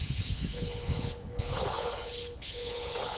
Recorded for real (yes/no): no